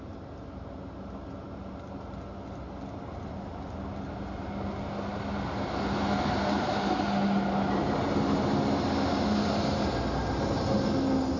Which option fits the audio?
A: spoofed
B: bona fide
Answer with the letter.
B